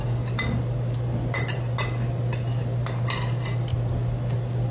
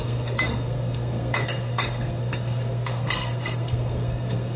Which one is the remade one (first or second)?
second